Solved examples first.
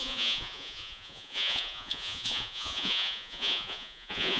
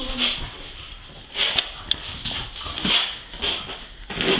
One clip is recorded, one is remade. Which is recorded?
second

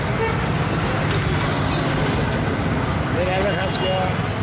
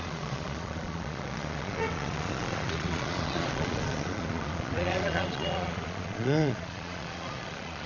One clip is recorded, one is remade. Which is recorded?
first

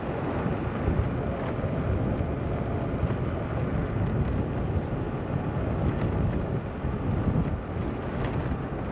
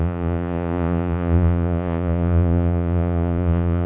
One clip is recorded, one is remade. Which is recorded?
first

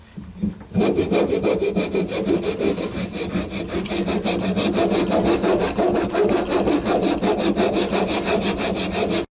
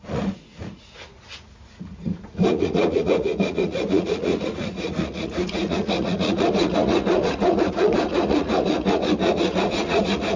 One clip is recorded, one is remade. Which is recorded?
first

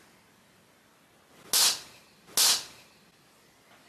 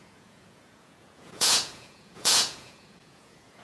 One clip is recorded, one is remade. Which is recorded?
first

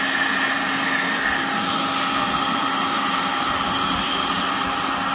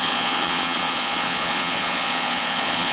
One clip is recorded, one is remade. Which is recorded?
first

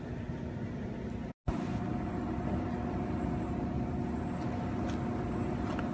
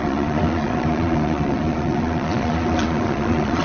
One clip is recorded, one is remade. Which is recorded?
first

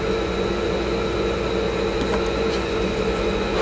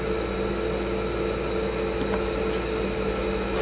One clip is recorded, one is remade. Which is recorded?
second